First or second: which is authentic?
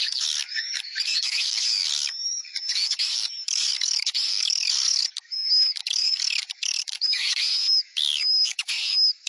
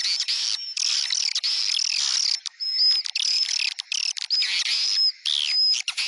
second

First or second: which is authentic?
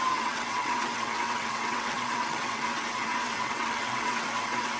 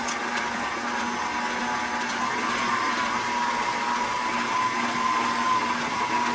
second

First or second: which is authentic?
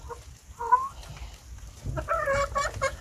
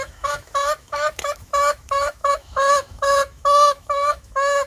first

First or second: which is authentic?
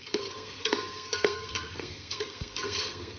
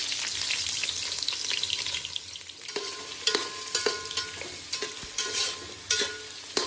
second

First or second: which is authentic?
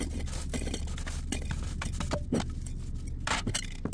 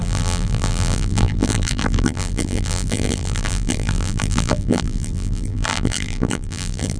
first